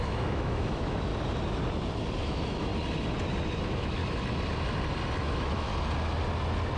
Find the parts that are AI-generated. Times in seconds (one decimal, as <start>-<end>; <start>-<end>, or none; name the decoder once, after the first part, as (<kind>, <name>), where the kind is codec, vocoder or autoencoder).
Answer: 0.0-1.1 (autoencoder, DAC-VAE); 2.2-2.7; 3.6-4.0; 5.2-5.7